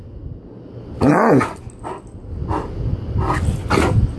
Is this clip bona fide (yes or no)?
yes